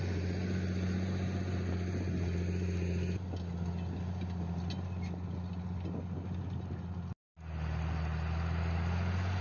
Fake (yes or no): no